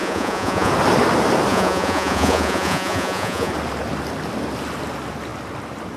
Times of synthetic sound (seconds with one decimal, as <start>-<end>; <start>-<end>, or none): 0.0-0.7; 1.5-3.5